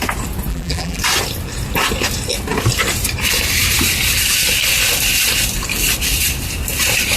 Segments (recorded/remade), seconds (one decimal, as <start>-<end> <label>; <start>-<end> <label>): 0.0-0.5 recorded; 0.5-1.0 remade; 1.0-7.2 recorded